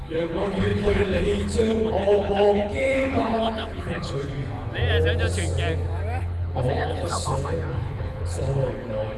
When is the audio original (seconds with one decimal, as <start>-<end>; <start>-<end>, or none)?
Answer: 4.3-6.2